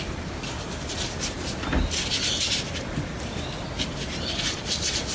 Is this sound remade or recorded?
recorded